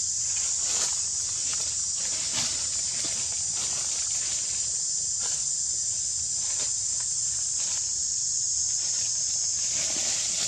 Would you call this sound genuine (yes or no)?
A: yes